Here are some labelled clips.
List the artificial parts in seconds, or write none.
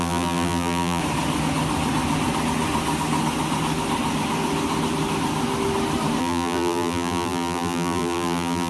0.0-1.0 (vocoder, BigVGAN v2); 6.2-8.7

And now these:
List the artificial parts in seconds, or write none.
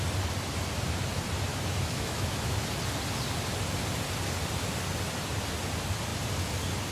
1.5-2.6 (autoencoder, DAC-VAE)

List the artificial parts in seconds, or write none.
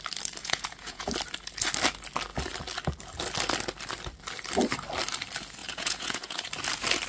0.4-1.1 (vocoder, Vocos); 5.6-6.5